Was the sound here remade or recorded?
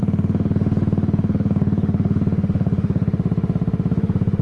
remade